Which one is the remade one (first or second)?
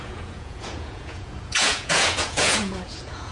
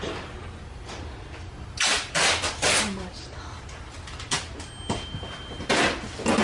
first